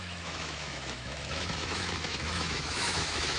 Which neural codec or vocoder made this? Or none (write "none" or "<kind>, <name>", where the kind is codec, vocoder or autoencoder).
autoencoder, DAC-VAE